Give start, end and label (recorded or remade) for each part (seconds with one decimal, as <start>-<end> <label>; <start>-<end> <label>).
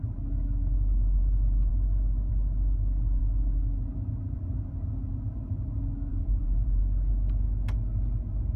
0.0-6.1 recorded; 6.1-6.8 remade; 6.8-8.6 recorded